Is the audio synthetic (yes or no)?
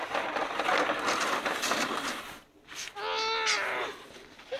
no